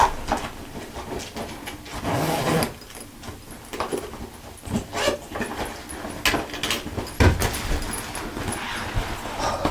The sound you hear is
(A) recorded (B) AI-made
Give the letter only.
A